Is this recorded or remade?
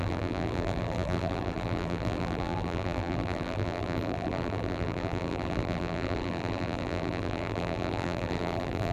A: remade